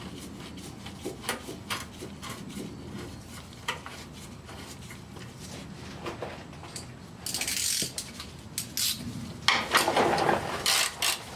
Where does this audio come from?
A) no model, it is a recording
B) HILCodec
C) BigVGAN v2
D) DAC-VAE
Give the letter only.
A